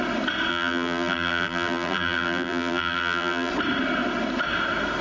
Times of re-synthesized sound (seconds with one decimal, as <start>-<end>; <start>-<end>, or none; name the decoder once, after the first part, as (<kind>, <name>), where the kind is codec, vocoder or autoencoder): 0.5-3.5 (vocoder, BigVGAN v2)